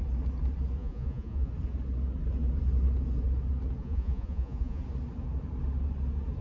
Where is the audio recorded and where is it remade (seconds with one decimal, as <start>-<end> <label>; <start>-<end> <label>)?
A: 0.0-0.8 recorded; 0.8-1.5 remade; 1.5-3.8 recorded; 3.8-4.8 remade; 4.8-6.4 recorded